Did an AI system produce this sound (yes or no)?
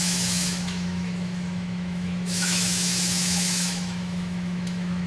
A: yes